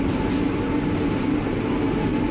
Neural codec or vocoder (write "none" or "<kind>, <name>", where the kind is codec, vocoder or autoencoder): none